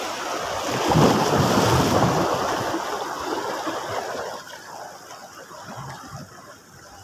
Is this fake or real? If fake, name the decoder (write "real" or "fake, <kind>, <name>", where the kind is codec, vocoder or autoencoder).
real